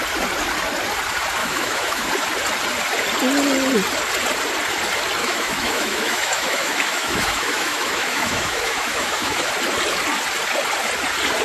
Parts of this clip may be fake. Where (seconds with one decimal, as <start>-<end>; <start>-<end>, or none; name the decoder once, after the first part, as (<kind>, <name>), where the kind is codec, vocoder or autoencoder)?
1.4-2.1 (autoencoder, DAC-VAE); 5.2-9.5